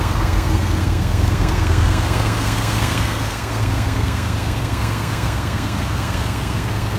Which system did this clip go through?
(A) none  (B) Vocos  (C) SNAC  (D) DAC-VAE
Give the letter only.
C